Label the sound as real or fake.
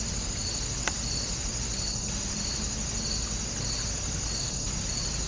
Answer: real